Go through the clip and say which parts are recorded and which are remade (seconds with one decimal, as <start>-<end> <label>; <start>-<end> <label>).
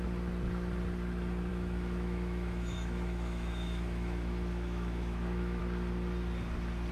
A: 0.0-1.5 recorded; 1.5-5.6 remade; 5.6-6.9 recorded